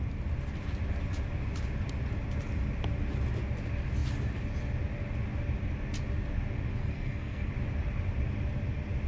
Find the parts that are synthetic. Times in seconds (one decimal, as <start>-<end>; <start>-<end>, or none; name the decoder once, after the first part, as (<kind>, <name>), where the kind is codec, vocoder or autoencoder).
6.8-7.5 (codec, SNAC)